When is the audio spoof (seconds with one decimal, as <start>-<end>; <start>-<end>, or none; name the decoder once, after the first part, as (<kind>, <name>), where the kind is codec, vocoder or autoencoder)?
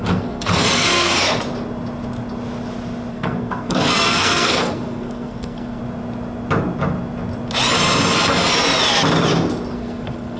0.0-1.1 (codec, SNAC); 3.1-5.8; 9.7-10.4